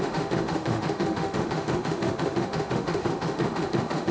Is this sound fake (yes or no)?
yes